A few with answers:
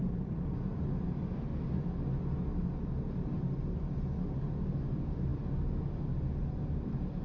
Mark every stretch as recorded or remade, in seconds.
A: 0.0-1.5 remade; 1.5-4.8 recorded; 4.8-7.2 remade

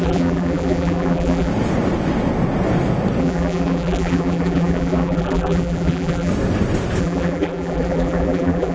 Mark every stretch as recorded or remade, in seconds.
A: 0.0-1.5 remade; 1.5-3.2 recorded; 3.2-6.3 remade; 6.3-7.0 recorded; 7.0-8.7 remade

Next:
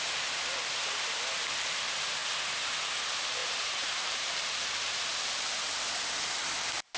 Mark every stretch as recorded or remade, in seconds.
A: 0.0-3.4 recorded; 3.4-5.0 remade; 5.0-7.0 recorded